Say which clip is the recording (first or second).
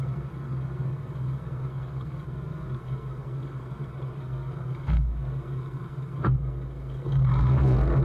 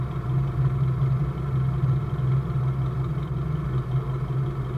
second